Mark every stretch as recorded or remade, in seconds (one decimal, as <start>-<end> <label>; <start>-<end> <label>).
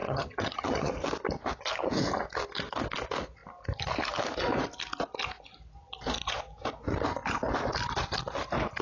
0.0-0.9 remade; 0.9-8.8 recorded